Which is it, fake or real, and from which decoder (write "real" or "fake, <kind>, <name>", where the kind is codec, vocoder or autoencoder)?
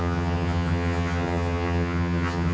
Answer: fake, vocoder, HiFi-GAN